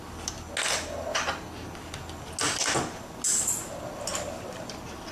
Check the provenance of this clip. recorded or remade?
recorded